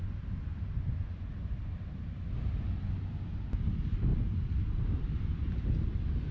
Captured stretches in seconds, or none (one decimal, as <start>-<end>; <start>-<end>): 0.0-4.1; 5.5-6.3